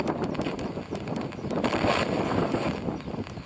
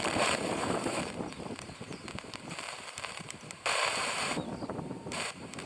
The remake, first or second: second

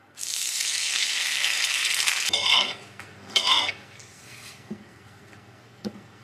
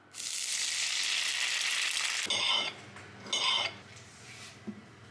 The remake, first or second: first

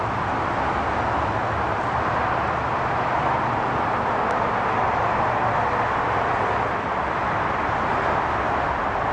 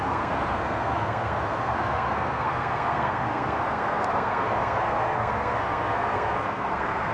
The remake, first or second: second